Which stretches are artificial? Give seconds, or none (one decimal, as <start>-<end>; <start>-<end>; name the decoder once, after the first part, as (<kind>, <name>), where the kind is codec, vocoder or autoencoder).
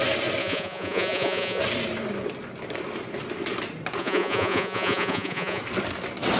0.4-1.6 (vocoder, Vocos); 4.0-5.6